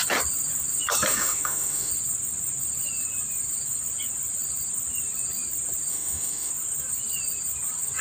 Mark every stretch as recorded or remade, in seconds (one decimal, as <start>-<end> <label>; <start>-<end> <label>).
0.0-1.1 recorded; 1.1-1.9 remade; 1.9-5.9 recorded; 5.9-6.5 remade; 6.5-8.0 recorded